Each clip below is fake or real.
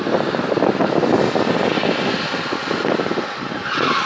real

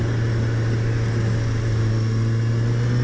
real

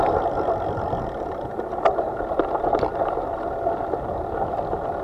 real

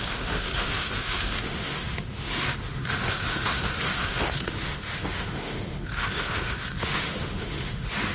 fake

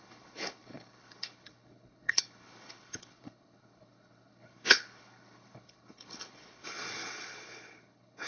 fake